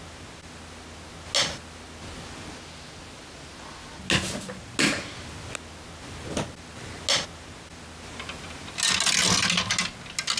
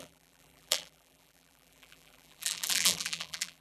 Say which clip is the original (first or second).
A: first